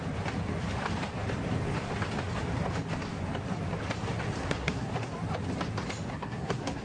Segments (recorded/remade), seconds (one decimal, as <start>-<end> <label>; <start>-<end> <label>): 0.0-4.4 recorded; 4.4-4.9 remade; 4.9-6.1 recorded; 6.1-6.8 remade